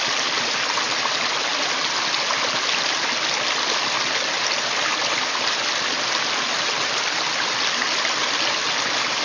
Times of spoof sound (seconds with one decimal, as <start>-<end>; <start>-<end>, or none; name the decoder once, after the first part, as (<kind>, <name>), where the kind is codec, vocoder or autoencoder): none